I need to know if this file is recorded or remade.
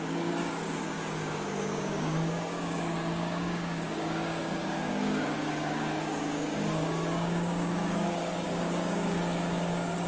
remade